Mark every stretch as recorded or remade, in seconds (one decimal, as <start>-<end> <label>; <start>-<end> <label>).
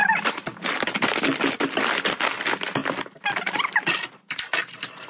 0.0-5.1 recorded